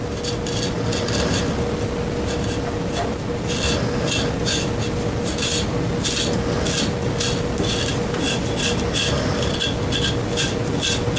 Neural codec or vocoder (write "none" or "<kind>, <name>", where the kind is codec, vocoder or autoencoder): none